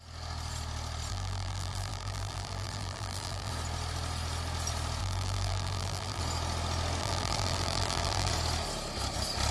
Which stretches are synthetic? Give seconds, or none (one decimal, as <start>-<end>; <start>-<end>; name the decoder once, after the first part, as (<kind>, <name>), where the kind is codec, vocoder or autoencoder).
1.1-3.5 (vocoder, BigVGAN v2); 5.0-6.2; 7.0-8.3